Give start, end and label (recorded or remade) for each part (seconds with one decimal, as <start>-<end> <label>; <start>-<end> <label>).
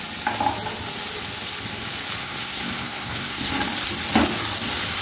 0.0-2.2 recorded; 2.2-3.5 remade; 3.5-5.0 recorded